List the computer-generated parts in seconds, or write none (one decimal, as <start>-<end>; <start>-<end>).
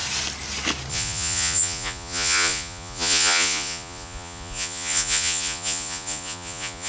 0.9-6.9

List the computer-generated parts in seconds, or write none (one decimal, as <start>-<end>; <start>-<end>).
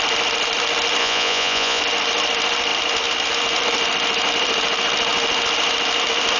1.0-1.8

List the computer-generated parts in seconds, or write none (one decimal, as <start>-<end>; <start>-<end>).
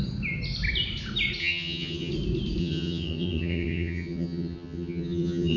1.4-2.1; 2.6-5.6